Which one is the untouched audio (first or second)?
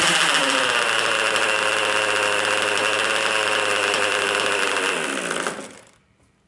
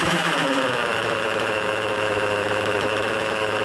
first